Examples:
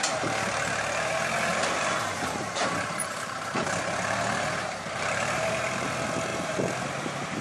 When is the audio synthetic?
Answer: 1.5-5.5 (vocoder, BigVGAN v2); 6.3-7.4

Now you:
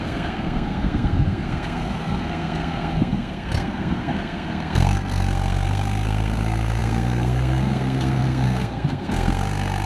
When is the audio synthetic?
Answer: 0.0-9.9 (codec, SNAC)